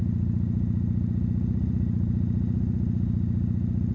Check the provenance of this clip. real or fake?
real